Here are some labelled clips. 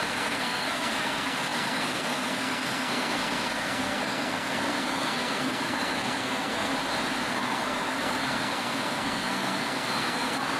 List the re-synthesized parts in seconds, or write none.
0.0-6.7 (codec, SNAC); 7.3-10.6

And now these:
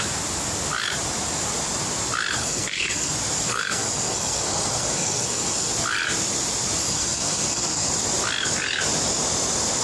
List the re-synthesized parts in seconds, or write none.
2.4-3.1 (codec, SNAC); 3.5-5.7; 6.8-7.9

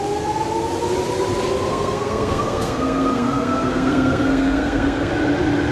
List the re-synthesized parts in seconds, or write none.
1.7-5.1 (codec, SNAC)

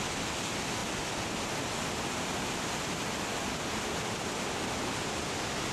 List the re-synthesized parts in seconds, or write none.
none

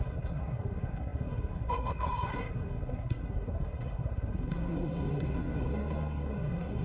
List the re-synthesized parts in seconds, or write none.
0.0-6.8 (codec, SNAC)

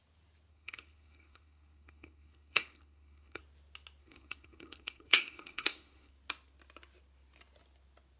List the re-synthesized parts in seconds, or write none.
0.5-3.4 (codec, SNAC); 4.0-6.1

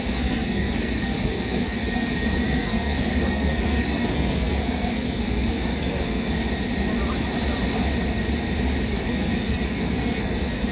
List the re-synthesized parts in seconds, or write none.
0.0-6.4 (codec, SNAC); 8.9-10.7

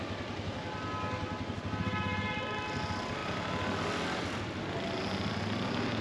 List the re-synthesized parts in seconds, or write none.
none